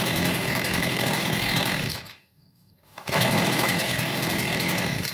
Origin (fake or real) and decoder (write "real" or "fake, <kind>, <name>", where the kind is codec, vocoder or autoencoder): fake, codec, DAC